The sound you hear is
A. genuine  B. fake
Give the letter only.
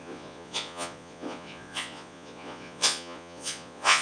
B